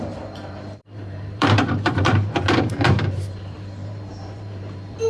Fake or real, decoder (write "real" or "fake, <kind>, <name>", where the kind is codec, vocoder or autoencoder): fake, vocoder, BigVGAN v2